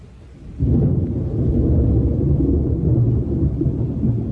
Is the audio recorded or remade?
recorded